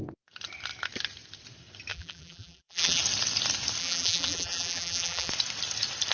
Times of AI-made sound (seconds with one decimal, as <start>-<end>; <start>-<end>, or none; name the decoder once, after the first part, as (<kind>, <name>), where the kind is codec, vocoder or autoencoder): 1.9-3.0 (vocoder, BigVGAN v2); 3.8-5.3